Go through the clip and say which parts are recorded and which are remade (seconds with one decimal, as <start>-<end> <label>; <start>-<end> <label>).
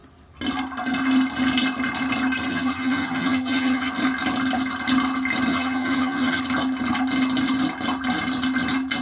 0.0-2.5 recorded; 2.5-3.9 remade; 3.9-5.5 recorded; 5.5-6.4 remade; 6.4-9.0 recorded